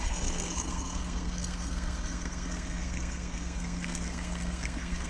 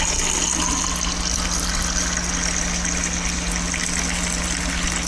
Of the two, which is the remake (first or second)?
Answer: first